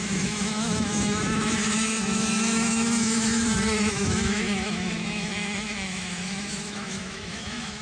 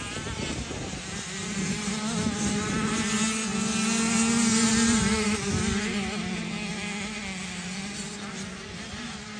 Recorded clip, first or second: second